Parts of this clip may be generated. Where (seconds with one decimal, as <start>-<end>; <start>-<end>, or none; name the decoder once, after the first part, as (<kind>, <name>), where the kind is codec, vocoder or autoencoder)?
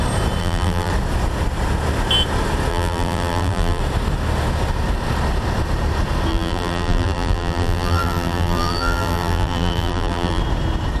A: 0.4-0.9 (vocoder, BigVGAN v2); 2.7-3.8; 6.3-10.4